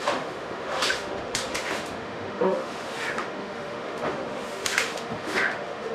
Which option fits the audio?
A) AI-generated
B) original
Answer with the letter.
A